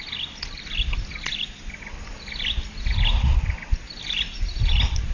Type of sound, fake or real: real